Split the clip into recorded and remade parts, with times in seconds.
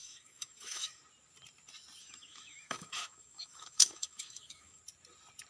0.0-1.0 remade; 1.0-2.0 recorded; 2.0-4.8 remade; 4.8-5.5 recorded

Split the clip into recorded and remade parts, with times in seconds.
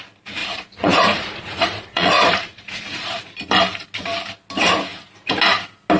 0.0-0.4 recorded; 0.4-3.2 remade; 3.2-6.0 recorded